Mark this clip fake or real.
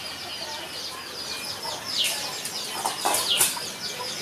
real